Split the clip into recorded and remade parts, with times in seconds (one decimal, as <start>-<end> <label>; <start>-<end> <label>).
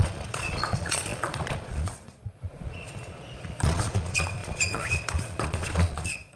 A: 0.0-6.4 remade